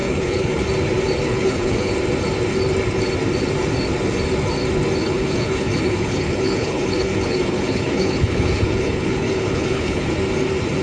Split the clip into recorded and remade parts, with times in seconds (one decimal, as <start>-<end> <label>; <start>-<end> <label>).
0.0-0.6 remade; 0.6-1.3 recorded; 1.3-1.9 remade; 1.9-5.0 recorded; 5.0-10.1 remade; 10.1-10.8 recorded